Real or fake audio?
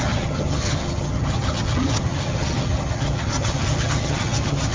fake